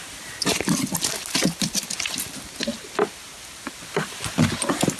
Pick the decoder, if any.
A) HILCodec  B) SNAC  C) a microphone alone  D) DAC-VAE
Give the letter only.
C